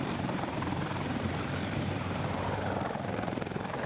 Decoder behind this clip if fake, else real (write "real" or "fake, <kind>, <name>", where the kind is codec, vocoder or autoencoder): fake, vocoder, BigVGAN v2